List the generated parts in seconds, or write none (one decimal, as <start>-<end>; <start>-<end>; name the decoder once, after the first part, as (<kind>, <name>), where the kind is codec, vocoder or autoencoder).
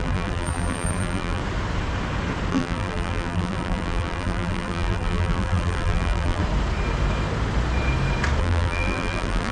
0.0-1.4 (vocoder, BigVGAN v2); 2.5-6.4; 8.4-9.5